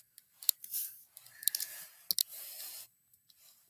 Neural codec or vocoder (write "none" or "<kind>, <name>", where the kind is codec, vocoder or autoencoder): none